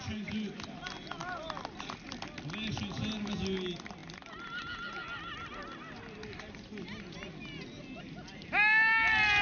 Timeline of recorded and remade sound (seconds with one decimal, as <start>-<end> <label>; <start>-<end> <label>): 0.0-9.4 recorded